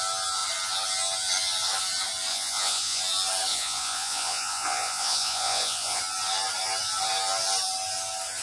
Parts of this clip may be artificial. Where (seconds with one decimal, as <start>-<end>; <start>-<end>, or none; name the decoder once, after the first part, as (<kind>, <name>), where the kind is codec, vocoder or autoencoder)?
2.3-3.0 (vocoder, Vocos); 3.5-6.0

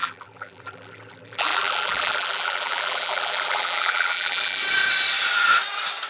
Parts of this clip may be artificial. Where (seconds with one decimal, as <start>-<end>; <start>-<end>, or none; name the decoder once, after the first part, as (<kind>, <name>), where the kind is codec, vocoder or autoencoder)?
0.0-4.6 (vocoder, BigVGAN v2)

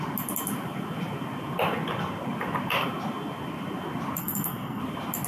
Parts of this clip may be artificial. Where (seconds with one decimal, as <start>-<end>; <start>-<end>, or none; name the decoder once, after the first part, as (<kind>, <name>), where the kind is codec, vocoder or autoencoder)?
4.2-4.8 (codec, SNAC)

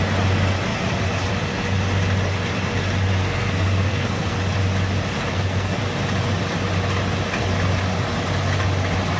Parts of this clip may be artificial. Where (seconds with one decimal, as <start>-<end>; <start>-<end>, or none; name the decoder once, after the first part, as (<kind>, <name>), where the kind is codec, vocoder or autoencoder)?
3.2-4.4 (codec, SNAC); 5.3-5.8

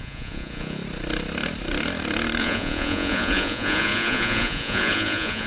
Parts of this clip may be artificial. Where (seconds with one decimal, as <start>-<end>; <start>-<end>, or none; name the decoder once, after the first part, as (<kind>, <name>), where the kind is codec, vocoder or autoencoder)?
0.0-0.8 (vocoder, Vocos); 2.4-5.5

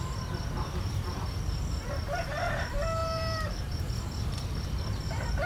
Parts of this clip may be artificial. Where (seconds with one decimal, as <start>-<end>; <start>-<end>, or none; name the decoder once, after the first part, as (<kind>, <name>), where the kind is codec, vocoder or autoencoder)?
3.0-3.8 (vocoder, BigVGAN v2)

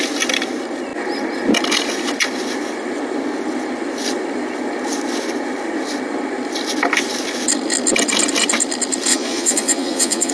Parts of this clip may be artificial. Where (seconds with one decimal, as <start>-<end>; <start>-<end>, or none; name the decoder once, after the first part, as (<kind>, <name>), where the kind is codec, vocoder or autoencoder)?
9.1-10.3 (vocoder, Vocos)

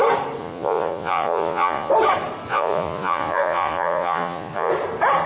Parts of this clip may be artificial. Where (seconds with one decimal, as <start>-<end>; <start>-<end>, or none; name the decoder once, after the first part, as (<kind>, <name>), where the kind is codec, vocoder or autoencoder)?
0.4-1.9 (vocoder, Vocos); 2.5-4.7